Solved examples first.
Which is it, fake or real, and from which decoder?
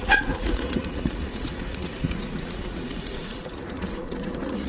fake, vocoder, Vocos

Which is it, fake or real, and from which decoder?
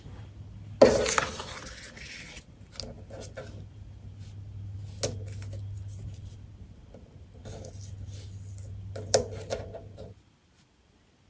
real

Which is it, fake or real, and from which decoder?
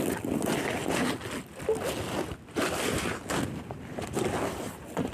real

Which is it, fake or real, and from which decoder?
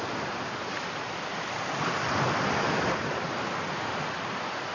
real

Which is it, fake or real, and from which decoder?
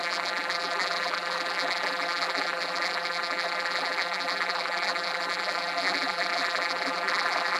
fake, vocoder, BigVGAN v2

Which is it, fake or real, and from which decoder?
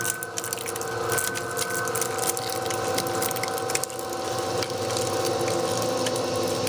real